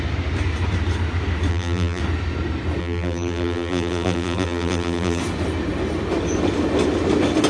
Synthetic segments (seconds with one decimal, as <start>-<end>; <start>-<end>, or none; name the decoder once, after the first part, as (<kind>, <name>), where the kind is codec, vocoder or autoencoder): 1.5-2.0 (vocoder, BigVGAN v2); 2.8-5.2

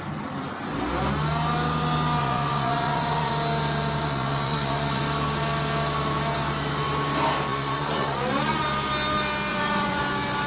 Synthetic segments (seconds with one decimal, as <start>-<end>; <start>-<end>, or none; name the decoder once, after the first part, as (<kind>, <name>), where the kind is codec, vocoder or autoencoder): 2.2-3.3 (vocoder, Vocos); 4.0-5.0; 7.5-8.6; 9.5-10.0

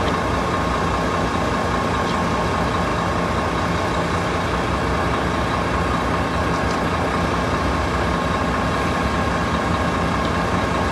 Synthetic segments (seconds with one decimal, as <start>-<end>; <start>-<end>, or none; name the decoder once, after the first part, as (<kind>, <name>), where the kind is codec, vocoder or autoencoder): none

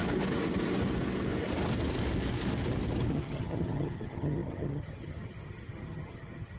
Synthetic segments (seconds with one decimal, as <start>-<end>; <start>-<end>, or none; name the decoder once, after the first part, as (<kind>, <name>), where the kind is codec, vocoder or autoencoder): 3.1-6.6 (vocoder, HiFi-GAN)

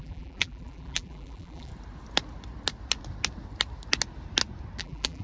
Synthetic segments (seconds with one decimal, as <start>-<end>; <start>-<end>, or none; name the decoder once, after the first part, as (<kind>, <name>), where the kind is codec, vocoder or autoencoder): 0.0-1.7 (vocoder, BigVGAN v2); 4.8-5.2

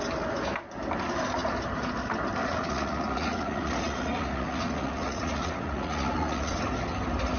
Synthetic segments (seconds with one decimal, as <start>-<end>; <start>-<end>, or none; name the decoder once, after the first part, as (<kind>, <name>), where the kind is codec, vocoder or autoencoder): 2.4-6.6 (vocoder, Vocos)